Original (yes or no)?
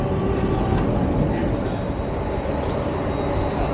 yes